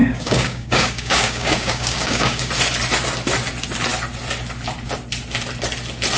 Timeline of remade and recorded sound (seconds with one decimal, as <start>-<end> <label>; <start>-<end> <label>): 0.0-2.5 remade; 2.5-6.2 recorded